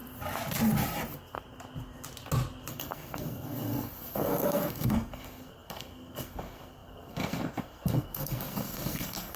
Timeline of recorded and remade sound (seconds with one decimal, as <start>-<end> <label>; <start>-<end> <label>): 0.0-2.7 recorded; 2.7-9.4 remade